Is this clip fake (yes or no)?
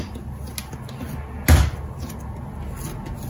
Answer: no